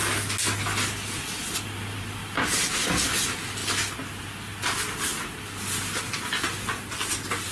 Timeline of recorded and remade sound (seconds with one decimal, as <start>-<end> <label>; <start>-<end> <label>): 0.0-7.5 recorded